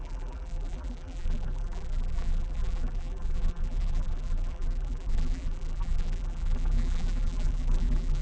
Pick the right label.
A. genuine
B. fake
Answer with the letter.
B